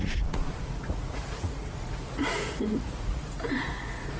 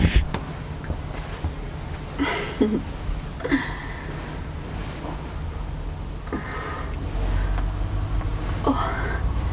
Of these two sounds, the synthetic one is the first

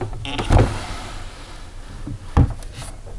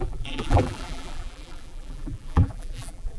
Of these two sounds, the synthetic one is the second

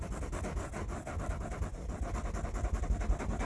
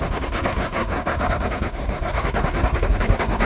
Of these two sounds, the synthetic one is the second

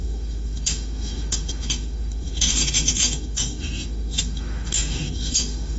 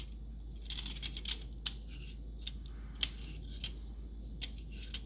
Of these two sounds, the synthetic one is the first